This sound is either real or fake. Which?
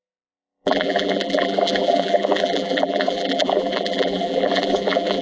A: fake